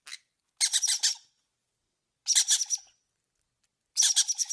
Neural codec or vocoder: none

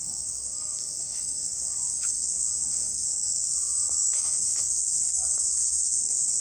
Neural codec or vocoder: codec, SNAC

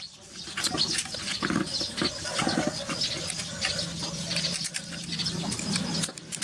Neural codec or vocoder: none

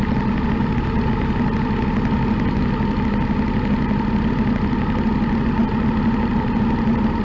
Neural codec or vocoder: none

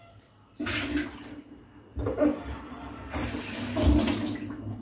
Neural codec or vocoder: none